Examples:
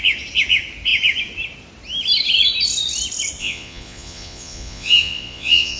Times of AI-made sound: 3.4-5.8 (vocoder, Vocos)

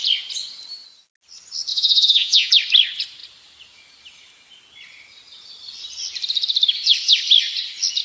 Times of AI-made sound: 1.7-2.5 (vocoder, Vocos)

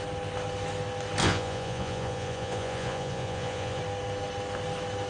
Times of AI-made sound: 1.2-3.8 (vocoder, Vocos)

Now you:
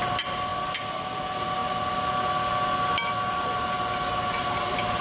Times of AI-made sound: none

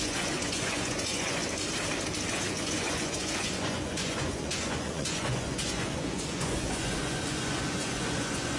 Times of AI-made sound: 0.0-1.4 (vocoder, Vocos); 2.3-8.6

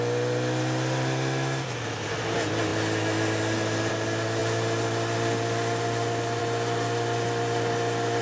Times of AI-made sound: none